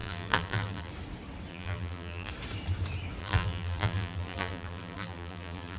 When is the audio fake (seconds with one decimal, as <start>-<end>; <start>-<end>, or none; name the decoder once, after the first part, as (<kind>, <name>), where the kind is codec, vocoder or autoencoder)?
0.0-0.9 (vocoder, BigVGAN v2); 1.5-2.3; 3.2-5.8